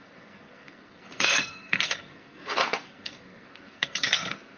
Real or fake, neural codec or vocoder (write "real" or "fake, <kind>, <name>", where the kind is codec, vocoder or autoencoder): fake, codec, SNAC